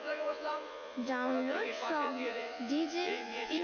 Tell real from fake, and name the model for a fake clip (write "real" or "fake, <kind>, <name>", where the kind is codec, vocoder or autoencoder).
fake, vocoder, Vocos